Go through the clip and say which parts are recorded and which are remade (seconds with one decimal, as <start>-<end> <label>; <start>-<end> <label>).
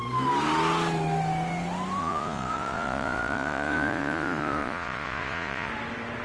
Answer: 0.0-2.0 recorded; 2.0-5.7 remade; 5.7-6.2 recorded